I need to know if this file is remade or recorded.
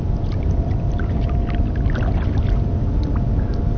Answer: recorded